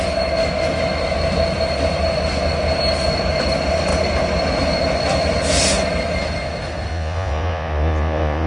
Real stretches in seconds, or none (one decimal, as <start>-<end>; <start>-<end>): 0.0-6.9